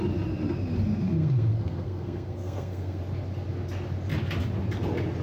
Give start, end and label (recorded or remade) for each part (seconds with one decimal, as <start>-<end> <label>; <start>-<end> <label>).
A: 0.0-1.0 recorded; 1.0-3.0 remade; 3.0-5.2 recorded